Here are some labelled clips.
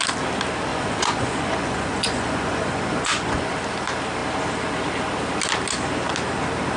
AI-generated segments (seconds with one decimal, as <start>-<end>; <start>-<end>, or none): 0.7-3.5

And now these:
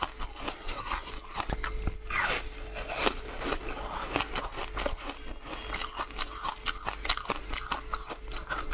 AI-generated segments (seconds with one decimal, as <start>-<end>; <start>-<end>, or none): 0.5-1.1

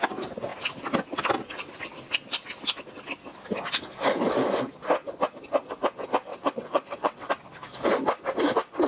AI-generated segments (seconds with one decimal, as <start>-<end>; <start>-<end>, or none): 6.3-7.3

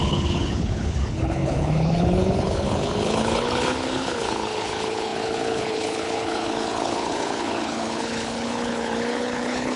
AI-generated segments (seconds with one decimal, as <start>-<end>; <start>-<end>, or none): 0.0-9.8

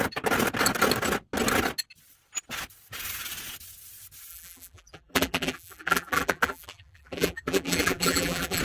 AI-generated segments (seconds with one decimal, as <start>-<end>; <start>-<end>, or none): 4.3-8.6

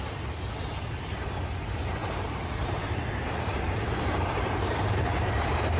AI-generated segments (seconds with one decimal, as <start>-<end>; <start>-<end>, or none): 2.0-5.8

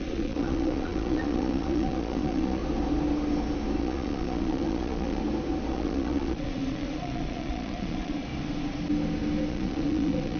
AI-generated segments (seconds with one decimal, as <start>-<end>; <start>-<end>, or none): 0.0-2.6; 3.8-5.2; 5.7-8.3; 9.5-10.4

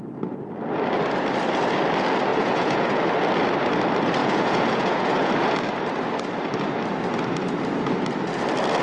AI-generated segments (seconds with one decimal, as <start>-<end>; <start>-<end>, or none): 2.3-3.0; 4.2-5.3